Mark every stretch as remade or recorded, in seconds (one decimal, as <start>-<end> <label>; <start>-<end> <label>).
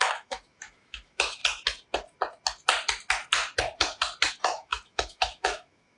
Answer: 0.0-1.4 remade; 1.4-4.3 recorded; 4.3-6.0 remade